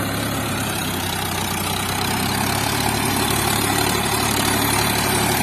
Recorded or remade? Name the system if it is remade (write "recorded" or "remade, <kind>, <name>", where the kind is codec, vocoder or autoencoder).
remade, vocoder, BigVGAN v2